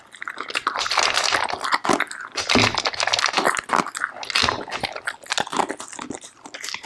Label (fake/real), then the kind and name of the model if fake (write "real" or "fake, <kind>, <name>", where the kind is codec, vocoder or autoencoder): real